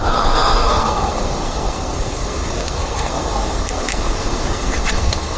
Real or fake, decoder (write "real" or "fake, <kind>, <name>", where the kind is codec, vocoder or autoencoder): fake, codec, SNAC